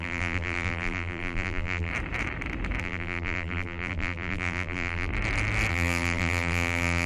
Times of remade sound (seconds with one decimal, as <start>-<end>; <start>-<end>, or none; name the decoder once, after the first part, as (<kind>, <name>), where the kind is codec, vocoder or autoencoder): 0.0-1.9 (vocoder, BigVGAN v2); 2.8-5.1; 5.7-7.1